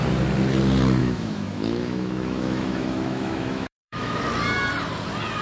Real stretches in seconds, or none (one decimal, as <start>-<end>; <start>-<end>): 0.0-1.0; 4.2-5.4